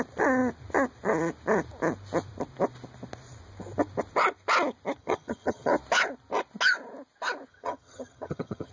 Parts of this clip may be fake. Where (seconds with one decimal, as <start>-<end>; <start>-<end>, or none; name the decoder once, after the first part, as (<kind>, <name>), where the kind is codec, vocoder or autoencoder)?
5.0-5.7 (vocoder, HiFi-GAN); 7.5-8.7